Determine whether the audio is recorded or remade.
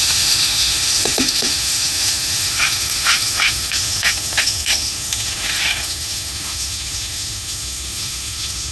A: remade